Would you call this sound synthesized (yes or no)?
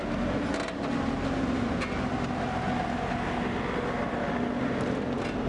no